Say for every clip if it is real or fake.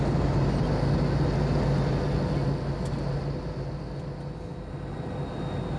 real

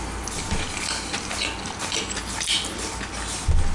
real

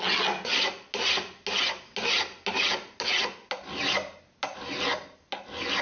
real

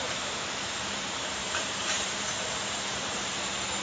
fake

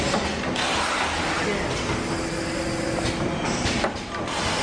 real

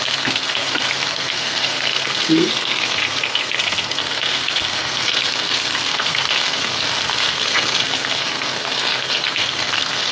fake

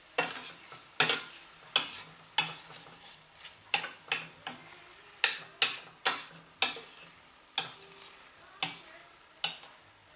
real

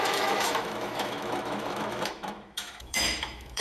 fake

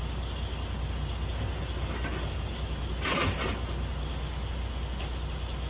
real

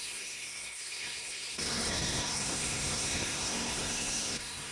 fake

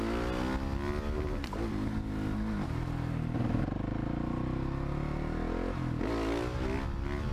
real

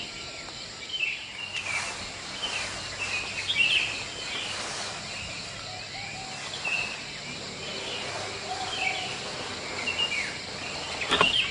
real